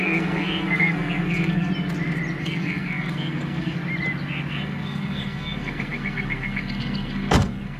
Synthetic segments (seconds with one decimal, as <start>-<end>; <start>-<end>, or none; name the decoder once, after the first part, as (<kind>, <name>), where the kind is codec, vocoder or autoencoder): 0.0-1.7 (codec, SNAC); 2.4-3.8; 4.5-7.8